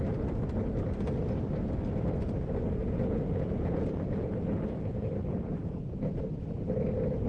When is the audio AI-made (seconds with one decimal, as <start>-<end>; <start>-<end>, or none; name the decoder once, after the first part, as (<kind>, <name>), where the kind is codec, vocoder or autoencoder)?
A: 2.8-5.1 (vocoder, Vocos); 5.6-6.2